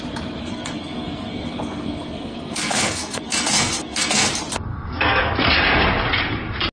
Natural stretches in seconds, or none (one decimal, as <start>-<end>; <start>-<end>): 0.0-0.4; 4.3-4.7; 5.3-6.7